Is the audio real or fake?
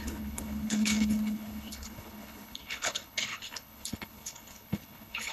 fake